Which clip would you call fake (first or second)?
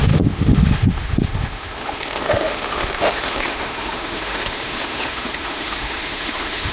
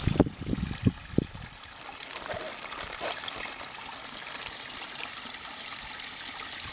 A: first